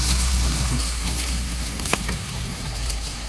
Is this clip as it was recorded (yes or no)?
no